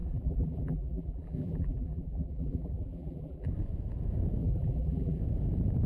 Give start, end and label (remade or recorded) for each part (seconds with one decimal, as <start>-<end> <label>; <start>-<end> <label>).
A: 0.0-3.5 remade; 3.5-4.4 recorded; 4.4-5.2 remade; 5.2-5.9 recorded